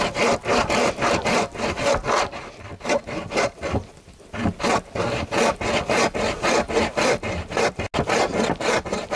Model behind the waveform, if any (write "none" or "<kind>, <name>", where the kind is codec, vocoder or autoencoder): none